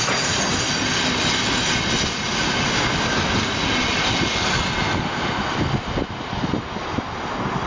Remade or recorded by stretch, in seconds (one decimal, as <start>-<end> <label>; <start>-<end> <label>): 0.0-7.7 recorded